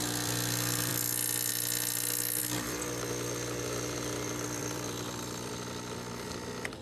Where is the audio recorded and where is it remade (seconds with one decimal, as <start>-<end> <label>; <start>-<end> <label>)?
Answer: 0.0-2.4 recorded; 2.4-5.5 remade; 5.5-6.8 recorded